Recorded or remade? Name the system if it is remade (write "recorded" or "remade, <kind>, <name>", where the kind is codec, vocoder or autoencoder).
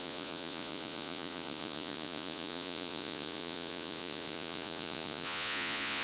remade, vocoder, Vocos